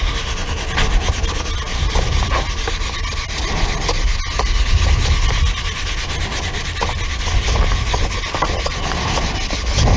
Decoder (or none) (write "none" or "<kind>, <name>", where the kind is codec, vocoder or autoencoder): none